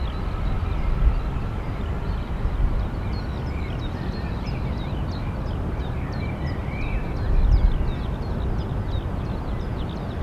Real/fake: real